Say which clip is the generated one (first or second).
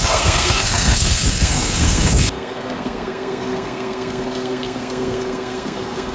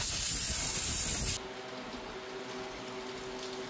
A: first